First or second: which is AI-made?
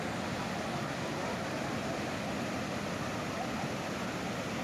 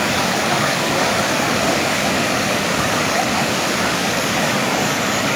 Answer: second